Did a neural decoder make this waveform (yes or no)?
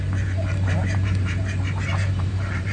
yes